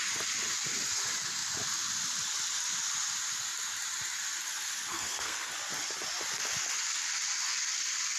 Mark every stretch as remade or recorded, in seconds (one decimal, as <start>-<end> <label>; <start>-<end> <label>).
0.0-4.9 recorded; 4.9-5.5 remade; 5.5-8.2 recorded